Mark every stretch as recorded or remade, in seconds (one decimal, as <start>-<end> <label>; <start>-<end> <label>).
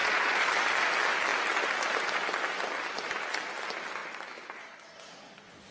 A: 0.0-0.5 remade; 0.5-5.7 recorded